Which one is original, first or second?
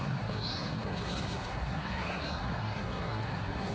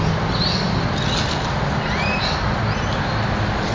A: second